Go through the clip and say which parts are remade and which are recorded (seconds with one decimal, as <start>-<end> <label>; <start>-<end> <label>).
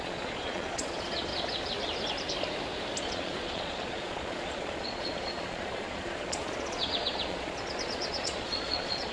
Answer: 0.0-1.3 remade; 1.3-3.0 recorded; 3.0-9.1 remade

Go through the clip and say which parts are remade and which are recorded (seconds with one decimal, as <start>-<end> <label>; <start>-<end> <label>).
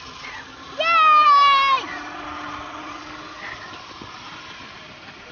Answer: 0.0-5.3 recorded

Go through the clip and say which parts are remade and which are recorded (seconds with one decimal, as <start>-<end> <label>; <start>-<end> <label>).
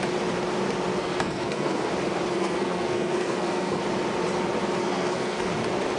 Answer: 0.0-0.9 recorded; 0.9-1.9 remade; 1.9-2.3 recorded; 2.3-3.8 remade; 3.8-4.8 recorded; 4.8-5.5 remade; 5.5-6.0 recorded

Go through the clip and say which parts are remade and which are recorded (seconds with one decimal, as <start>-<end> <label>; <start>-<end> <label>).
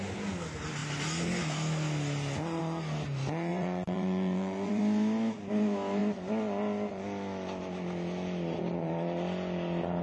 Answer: 0.0-3.5 recorded; 3.5-4.8 remade; 4.8-10.0 recorded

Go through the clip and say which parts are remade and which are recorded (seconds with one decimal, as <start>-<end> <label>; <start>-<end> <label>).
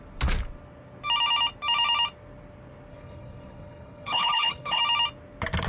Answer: 0.0-2.9 recorded; 2.9-4.8 remade; 4.8-5.7 recorded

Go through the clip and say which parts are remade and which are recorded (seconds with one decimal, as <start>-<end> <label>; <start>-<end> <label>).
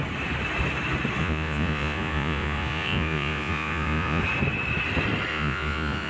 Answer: 0.0-1.2 recorded; 1.2-4.2 remade; 4.2-5.3 recorded; 5.3-6.1 remade